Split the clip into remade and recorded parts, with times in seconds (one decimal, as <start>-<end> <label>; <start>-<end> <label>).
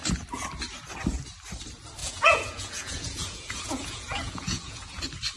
0.0-2.0 recorded; 2.0-5.0 remade; 5.0-5.4 recorded